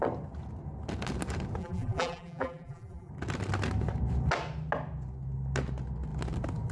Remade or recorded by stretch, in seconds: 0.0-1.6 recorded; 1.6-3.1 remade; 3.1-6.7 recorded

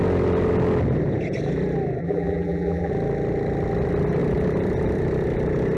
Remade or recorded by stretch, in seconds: 0.0-2.0 recorded; 2.0-2.9 remade; 2.9-5.8 recorded

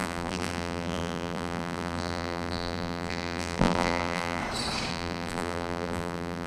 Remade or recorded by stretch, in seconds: 0.0-4.4 remade; 4.4-4.9 recorded; 4.9-6.5 remade

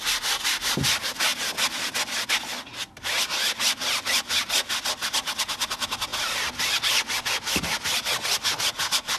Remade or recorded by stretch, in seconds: 0.0-9.2 recorded